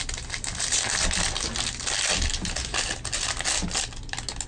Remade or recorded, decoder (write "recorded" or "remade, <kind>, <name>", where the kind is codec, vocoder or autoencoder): recorded